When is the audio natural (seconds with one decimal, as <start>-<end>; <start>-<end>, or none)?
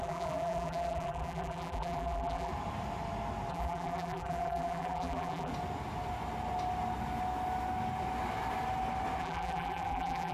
2.5-3.5; 5.5-9.2